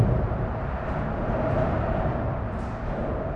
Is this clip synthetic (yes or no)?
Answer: no